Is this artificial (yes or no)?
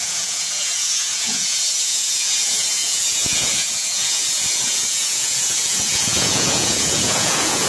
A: yes